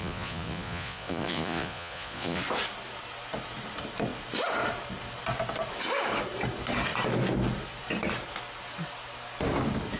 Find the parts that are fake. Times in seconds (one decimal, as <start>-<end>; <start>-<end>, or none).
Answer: 0.0-2.4